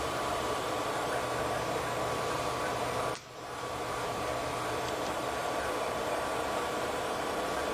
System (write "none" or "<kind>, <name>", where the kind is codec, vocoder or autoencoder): vocoder, BigVGAN v2